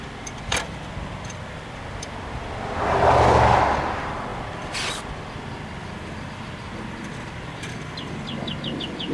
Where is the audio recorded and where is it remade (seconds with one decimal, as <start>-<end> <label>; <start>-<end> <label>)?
0.0-9.1 recorded